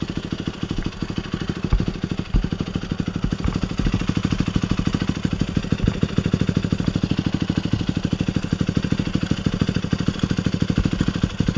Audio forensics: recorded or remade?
recorded